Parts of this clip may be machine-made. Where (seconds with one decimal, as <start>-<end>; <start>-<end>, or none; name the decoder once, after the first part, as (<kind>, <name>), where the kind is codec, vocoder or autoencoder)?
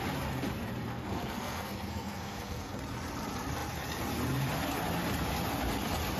0.9-2.8 (codec, SNAC)